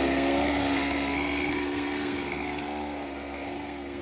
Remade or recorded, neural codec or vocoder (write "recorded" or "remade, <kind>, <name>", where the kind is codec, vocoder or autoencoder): remade, codec, SNAC